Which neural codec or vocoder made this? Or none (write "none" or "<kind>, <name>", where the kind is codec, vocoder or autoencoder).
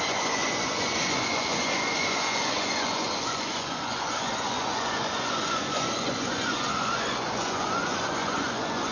vocoder, Vocos